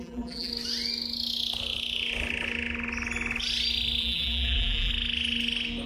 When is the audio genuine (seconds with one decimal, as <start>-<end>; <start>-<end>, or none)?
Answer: 0.5-4.0; 4.9-5.9